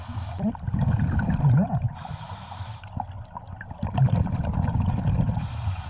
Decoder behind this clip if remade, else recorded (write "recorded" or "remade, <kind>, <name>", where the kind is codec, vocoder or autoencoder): recorded